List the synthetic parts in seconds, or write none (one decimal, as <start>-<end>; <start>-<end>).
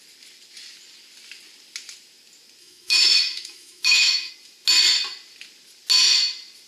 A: 2.6-4.3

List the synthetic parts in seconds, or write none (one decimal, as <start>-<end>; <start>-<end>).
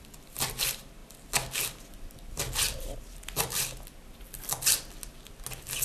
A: none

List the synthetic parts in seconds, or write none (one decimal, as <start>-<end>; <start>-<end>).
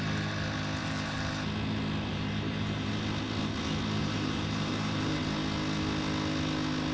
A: 0.8-1.3; 2.1-2.9; 4.0-5.2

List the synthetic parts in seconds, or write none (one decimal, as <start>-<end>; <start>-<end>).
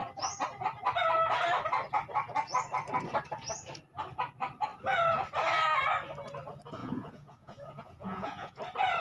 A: 6.8-8.6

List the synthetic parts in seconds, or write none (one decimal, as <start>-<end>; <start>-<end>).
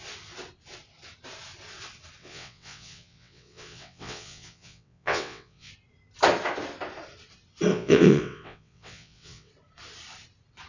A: 2.2-5.7; 7.7-9.5